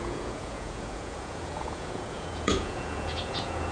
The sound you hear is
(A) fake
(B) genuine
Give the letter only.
A